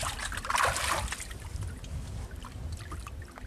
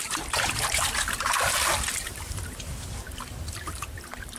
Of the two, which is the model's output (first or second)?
second